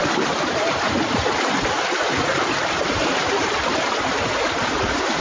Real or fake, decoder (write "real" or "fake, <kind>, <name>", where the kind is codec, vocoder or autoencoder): real